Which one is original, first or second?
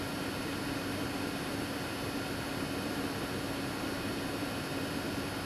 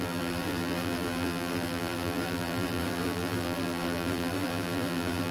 first